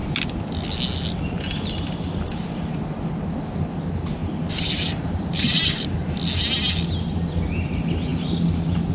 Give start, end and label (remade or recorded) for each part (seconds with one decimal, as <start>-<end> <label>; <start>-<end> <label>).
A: 0.0-4.2 recorded; 4.2-6.1 remade; 6.1-8.9 recorded